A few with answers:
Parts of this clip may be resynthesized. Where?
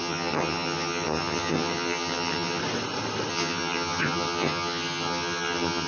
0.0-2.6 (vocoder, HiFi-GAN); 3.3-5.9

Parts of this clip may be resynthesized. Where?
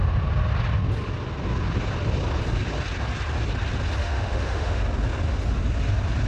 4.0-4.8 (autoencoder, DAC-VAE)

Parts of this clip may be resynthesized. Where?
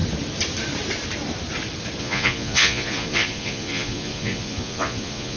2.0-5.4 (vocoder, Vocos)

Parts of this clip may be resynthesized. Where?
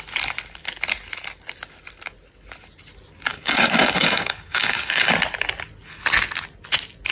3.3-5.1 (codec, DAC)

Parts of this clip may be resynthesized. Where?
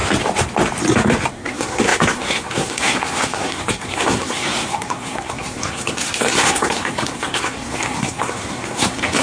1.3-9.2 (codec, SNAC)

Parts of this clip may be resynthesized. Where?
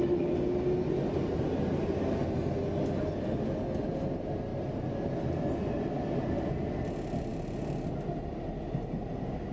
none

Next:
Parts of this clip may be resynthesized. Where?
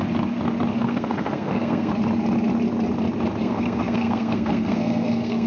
0.7-1.9 (codec, SNAC); 3.4-5.5